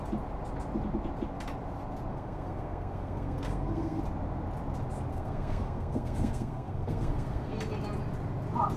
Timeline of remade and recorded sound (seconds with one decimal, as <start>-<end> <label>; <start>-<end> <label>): 0.0-2.1 recorded; 2.1-4.0 remade; 4.0-5.1 recorded; 5.1-7.6 remade; 7.6-8.8 recorded